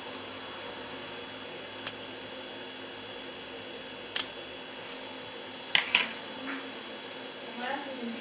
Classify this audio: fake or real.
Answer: real